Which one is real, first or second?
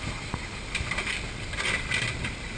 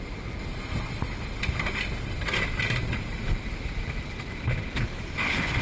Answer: second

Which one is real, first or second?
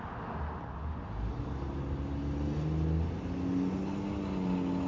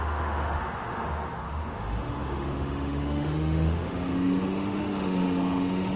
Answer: first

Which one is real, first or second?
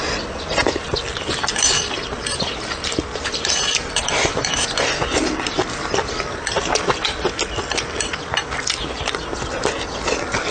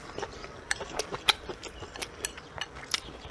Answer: first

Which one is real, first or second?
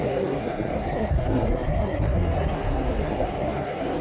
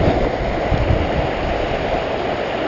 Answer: second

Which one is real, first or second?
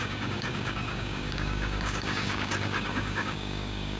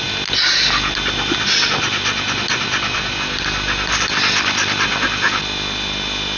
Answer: second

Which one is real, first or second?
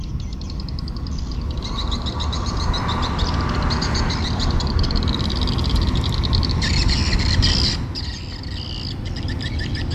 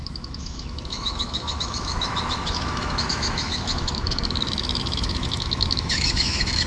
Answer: first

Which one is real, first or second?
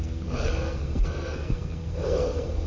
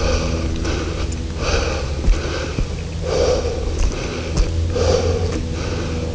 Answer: second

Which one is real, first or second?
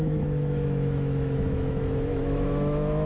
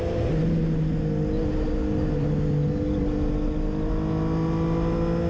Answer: second